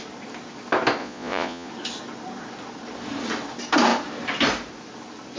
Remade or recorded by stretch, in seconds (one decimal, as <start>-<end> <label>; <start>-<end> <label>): 0.0-1.0 recorded; 1.0-1.7 remade; 1.7-5.4 recorded